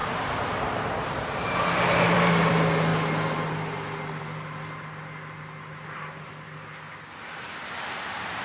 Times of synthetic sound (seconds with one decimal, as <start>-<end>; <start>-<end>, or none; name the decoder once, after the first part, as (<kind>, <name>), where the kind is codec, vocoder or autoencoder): 0.0-2.5 (vocoder, BigVGAN v2)